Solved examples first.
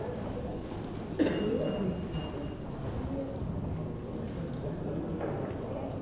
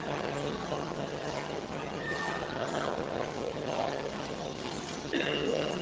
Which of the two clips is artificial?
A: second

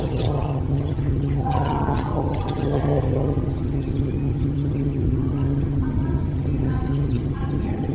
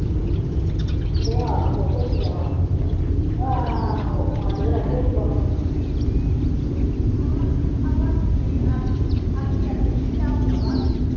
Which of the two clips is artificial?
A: first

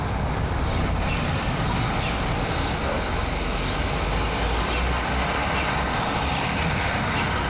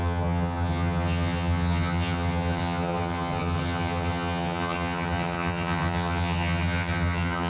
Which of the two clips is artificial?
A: second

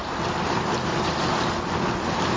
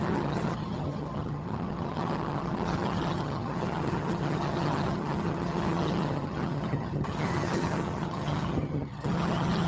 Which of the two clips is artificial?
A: second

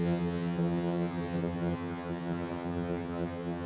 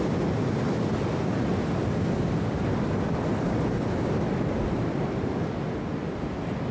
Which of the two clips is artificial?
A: first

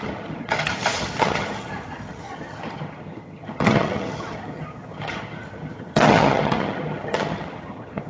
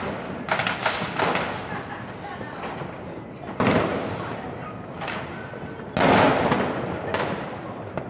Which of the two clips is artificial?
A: first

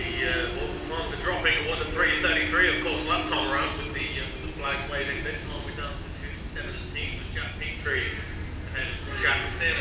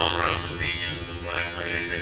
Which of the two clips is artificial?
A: second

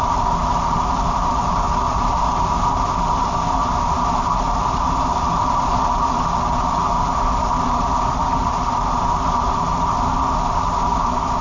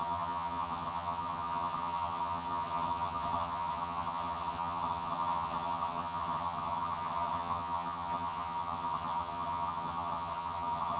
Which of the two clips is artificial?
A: second